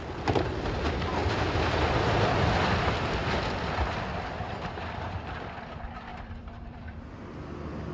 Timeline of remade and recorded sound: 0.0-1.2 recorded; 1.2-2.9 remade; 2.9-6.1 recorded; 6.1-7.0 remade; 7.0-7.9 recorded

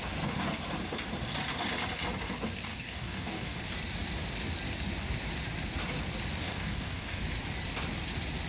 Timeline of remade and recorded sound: 0.0-2.7 recorded; 2.7-3.6 remade; 3.6-6.4 recorded; 6.4-7.2 remade; 7.2-8.5 recorded

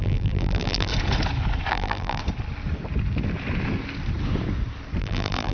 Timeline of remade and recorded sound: 0.0-0.9 remade; 0.9-1.7 recorded; 1.7-2.2 remade; 2.2-5.0 recorded; 5.0-5.5 remade

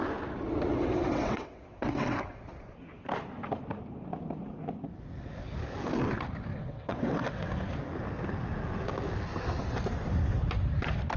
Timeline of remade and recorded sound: 0.0-0.7 recorded; 0.7-2.4 remade; 2.4-6.5 recorded; 6.5-7.5 remade; 7.5-11.2 recorded

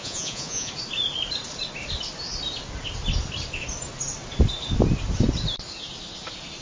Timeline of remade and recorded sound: 0.0-0.7 remade; 0.7-6.6 recorded

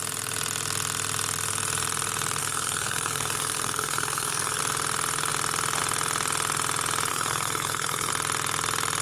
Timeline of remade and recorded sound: 0.0-2.4 recorded; 2.4-4.6 remade; 4.6-7.1 recorded; 7.1-8.1 remade; 8.1-9.0 recorded

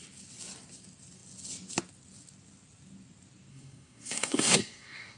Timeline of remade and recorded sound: 0.0-3.5 recorded; 3.5-5.2 remade